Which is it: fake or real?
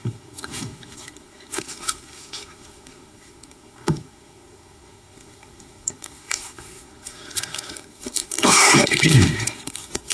fake